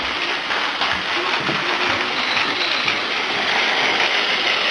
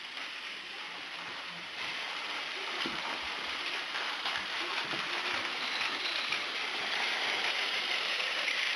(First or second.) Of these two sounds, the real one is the first